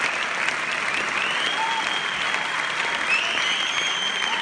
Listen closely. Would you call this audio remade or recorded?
recorded